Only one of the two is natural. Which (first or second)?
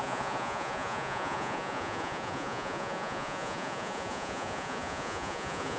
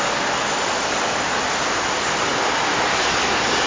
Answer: second